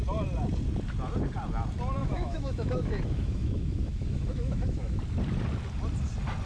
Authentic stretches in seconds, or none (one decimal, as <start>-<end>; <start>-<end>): 0.0-2.0; 5.0-6.5